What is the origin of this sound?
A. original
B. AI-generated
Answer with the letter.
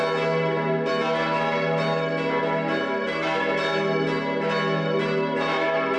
A